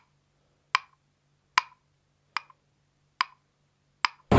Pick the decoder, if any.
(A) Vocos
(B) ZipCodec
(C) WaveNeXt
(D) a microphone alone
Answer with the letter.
D